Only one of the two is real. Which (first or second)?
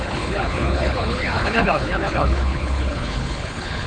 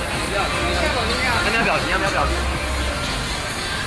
second